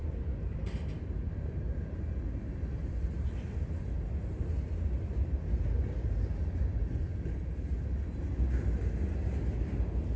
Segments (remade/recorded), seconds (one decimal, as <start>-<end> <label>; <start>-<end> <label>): 0.0-0.7 remade; 0.7-10.2 recorded